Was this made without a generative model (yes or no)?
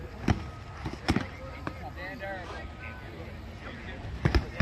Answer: yes